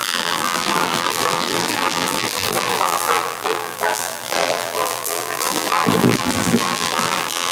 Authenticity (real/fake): fake